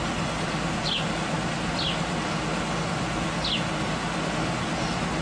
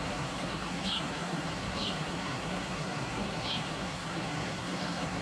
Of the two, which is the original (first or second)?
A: first